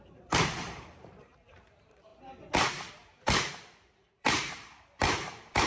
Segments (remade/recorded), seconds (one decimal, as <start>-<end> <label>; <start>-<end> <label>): 0.0-2.1 remade; 2.1-2.9 recorded; 2.9-5.7 remade